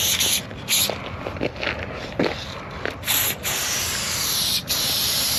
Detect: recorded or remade recorded